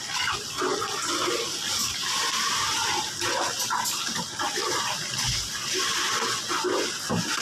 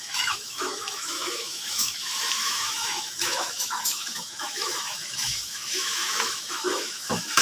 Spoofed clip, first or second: second